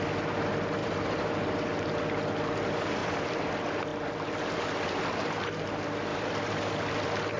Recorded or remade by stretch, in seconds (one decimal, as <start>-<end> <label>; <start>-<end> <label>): 0.0-0.8 recorded; 0.8-1.3 remade; 1.3-3.0 recorded; 3.0-3.5 remade; 3.5-3.9 recorded; 3.9-5.0 remade; 5.0-6.1 recorded; 6.1-7.4 remade